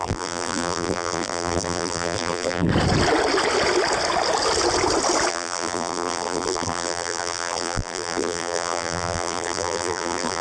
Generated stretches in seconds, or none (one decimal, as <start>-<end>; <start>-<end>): 0.0-2.7; 5.3-10.4